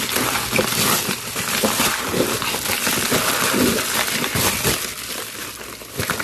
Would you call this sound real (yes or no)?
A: yes